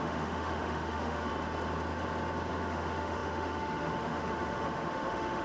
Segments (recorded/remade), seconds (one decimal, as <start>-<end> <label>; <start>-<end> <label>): 0.0-1.3 remade; 1.3-2.5 recorded; 2.5-5.4 remade